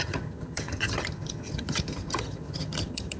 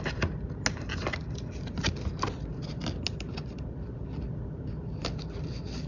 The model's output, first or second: first